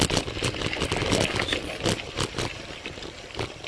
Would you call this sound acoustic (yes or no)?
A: yes